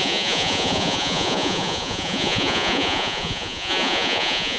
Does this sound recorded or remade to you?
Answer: remade